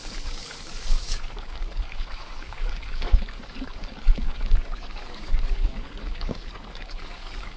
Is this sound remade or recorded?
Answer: remade